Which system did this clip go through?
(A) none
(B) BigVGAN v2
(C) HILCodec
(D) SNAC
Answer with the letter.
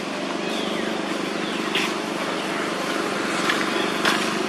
A